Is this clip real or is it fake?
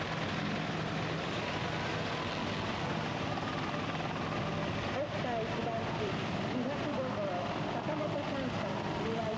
real